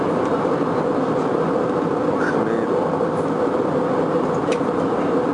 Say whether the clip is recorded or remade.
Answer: recorded